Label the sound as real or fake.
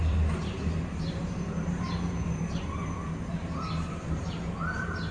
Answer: fake